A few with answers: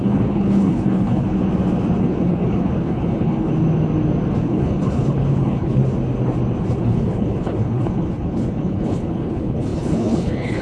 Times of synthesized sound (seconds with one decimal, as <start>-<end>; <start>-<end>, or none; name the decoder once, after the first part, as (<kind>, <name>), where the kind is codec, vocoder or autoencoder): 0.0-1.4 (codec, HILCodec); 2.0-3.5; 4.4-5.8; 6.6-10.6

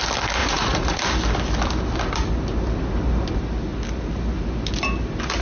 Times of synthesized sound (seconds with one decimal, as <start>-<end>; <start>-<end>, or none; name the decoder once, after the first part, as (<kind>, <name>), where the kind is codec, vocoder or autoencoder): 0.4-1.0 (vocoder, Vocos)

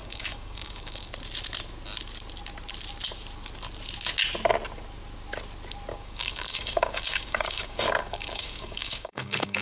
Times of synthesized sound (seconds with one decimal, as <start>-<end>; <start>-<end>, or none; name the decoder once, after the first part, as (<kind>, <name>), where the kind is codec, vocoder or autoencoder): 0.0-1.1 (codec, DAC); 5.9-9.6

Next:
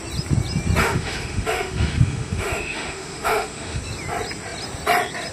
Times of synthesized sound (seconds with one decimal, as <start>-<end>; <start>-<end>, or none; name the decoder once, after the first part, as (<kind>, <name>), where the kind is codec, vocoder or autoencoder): 0.8-3.8 (autoencoder, DAC-VAE)

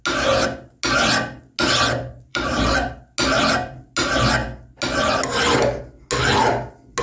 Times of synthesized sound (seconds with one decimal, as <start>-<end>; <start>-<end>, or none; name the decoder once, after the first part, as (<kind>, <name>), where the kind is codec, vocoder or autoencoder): 2.3-2.9 (vocoder, BigVGAN v2)

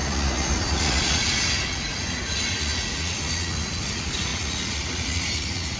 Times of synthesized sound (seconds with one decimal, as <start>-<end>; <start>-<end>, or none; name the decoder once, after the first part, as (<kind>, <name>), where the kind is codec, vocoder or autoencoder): 0.0-5.8 (vocoder, Vocos)

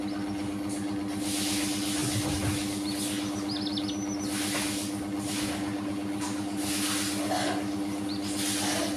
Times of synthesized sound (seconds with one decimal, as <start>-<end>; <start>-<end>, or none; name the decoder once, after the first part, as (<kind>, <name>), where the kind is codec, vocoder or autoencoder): none